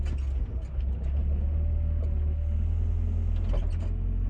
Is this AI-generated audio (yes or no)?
no